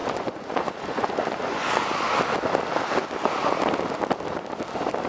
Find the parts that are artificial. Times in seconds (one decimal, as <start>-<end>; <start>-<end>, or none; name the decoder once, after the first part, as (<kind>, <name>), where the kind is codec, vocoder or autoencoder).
0.0-1.9 (vocoder, Vocos)

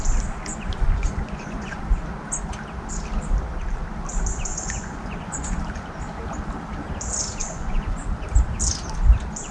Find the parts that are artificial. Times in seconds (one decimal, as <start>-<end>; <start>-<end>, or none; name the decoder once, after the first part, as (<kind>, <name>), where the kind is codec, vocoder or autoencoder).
0.5-1.8 (vocoder, Vocos); 4.5-5.6; 7.4-8.1

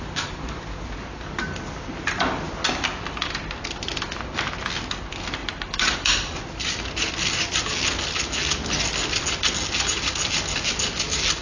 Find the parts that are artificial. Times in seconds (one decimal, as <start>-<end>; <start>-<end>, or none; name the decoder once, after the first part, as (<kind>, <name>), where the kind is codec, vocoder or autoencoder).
5.4-6.4 (vocoder, BigVGAN v2)